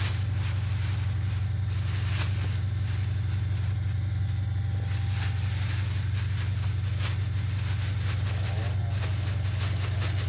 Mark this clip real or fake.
real